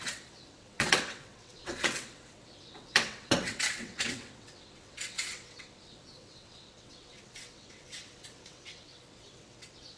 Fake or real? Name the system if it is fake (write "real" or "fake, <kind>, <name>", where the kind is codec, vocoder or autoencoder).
fake, vocoder, WaveNeXt